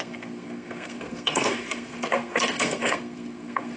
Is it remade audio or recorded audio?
remade